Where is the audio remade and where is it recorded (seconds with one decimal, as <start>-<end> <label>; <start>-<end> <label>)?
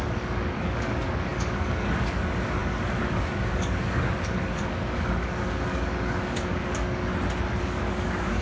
0.0-7.1 remade; 7.1-7.6 recorded; 7.6-8.4 remade